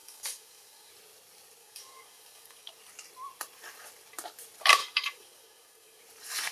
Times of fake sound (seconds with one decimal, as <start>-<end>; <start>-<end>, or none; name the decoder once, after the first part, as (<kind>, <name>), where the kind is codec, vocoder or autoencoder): 0.0-0.9 (codec, DAC); 1.6-2.8; 4.8-6.0

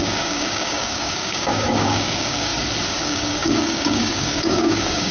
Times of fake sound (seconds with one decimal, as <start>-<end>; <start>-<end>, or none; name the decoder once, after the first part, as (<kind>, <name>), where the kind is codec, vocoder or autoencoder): 0.0-2.5 (codec, DAC); 3.0-5.1

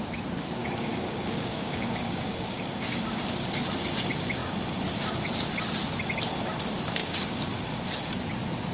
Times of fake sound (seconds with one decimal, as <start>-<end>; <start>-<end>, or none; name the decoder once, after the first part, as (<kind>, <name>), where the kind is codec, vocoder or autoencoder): 0.6-3.0 (codec, DAC); 7.0-7.5

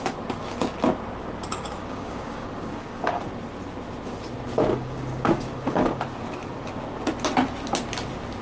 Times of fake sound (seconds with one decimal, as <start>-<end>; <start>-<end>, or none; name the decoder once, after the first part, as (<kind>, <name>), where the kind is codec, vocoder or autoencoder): 1.5-3.2 (codec, DAC); 4.7-6.0